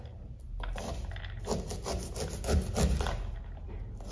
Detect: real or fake real